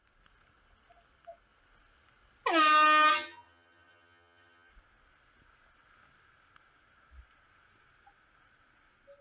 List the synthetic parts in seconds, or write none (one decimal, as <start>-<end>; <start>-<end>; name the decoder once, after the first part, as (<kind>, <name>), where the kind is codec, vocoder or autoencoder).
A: 3.1-4.7 (vocoder, HiFi-GAN)